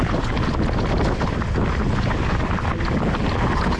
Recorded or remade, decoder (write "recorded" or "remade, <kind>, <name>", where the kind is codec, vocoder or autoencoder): recorded